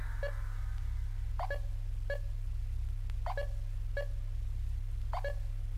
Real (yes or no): yes